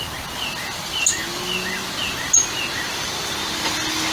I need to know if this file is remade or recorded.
recorded